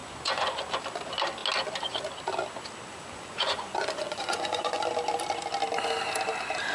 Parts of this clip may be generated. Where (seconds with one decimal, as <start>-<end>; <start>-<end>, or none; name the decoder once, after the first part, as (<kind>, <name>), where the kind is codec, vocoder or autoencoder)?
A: 0.0-0.5 (vocoder, Vocos); 2.9-4.8